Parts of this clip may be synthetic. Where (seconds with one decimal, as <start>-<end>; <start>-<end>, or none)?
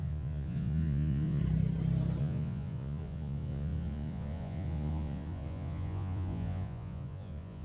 0.0-1.4; 2.2-7.6